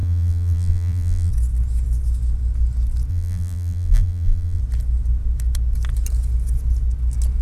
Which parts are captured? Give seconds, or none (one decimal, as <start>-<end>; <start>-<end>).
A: 1.3-3.1; 4.6-7.4